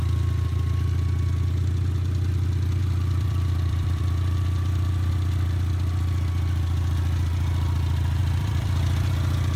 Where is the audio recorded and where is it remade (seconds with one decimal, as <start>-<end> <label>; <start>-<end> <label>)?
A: 0.0-2.8 recorded; 2.8-5.1 remade; 5.1-8.2 recorded; 8.2-9.1 remade; 9.1-9.6 recorded